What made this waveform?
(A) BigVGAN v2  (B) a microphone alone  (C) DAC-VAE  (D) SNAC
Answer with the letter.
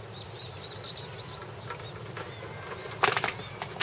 B